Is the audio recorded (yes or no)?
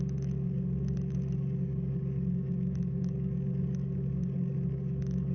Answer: no